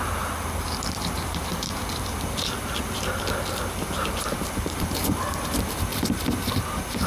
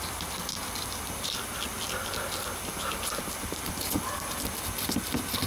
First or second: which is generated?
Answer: first